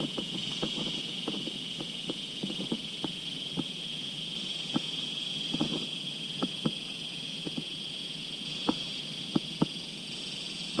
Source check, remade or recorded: remade